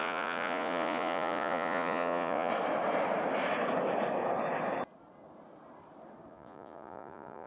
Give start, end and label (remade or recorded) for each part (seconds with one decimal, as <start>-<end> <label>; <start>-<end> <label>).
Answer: 0.0-2.5 remade; 2.5-6.3 recorded; 6.3-7.5 remade